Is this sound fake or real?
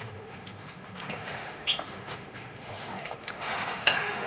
fake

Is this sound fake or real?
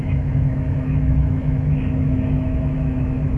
fake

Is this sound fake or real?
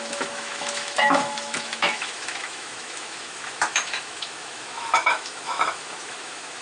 fake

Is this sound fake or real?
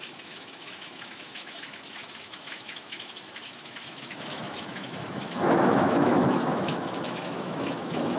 fake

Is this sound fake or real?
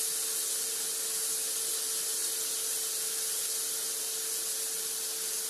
real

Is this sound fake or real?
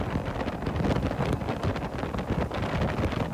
real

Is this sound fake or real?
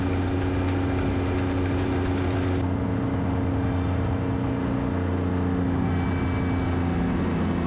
real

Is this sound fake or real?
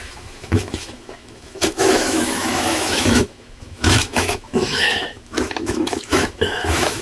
fake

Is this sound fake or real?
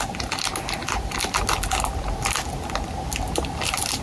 real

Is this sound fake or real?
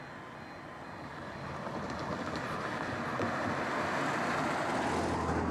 real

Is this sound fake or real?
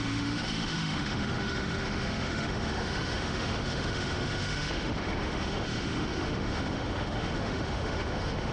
fake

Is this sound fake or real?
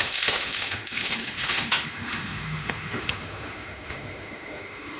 fake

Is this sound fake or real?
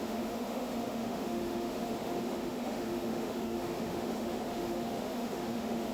fake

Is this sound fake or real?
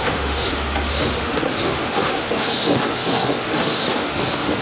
fake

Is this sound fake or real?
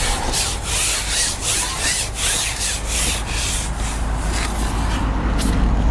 real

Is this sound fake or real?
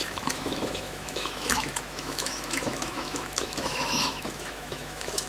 fake